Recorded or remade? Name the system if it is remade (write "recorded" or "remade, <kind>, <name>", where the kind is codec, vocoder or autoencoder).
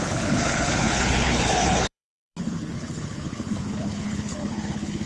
remade, codec, HILCodec